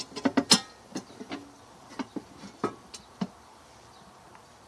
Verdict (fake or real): real